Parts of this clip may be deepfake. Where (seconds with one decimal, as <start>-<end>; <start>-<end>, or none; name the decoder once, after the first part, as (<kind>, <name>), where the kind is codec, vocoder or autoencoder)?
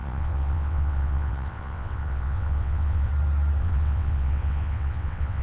0.0-3.1 (vocoder, WaveNeXt); 3.6-5.4